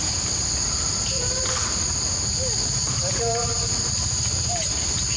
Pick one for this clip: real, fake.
real